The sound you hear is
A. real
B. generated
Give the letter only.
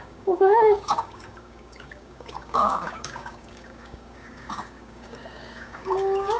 B